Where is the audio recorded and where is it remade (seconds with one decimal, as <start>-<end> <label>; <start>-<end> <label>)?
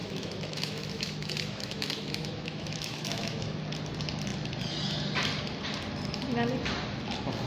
0.0-3.6 remade; 3.6-7.5 recorded